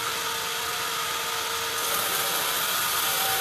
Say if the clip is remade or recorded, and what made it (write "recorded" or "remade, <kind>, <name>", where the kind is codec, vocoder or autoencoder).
recorded